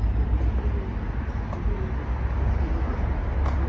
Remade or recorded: recorded